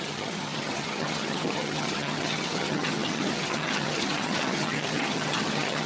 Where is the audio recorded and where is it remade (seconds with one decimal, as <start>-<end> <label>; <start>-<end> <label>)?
0.0-5.9 remade